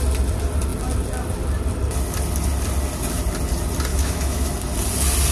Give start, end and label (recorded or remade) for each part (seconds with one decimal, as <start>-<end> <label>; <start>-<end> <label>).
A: 0.0-3.9 recorded; 3.9-4.5 remade; 4.5-5.3 recorded